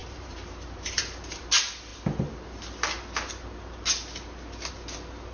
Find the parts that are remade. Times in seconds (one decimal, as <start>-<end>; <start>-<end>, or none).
0.0-1.4